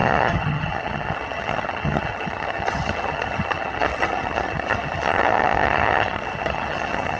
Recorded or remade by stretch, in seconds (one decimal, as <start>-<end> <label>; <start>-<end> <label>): 0.0-7.2 remade